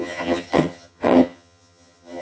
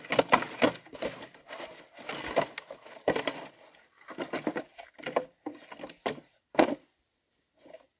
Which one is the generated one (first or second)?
first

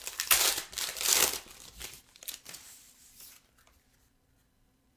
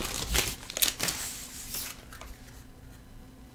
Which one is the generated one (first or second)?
first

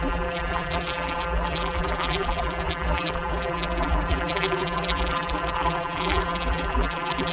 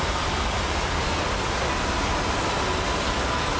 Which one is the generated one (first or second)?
first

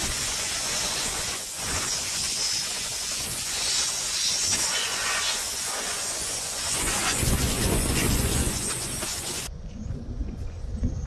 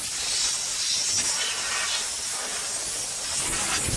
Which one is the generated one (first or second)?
first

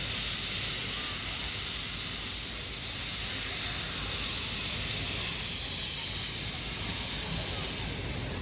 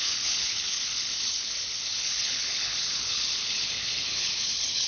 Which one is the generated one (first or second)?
second